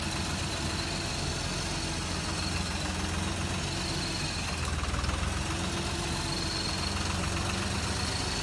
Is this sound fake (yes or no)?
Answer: no